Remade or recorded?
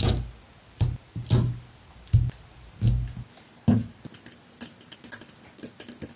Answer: recorded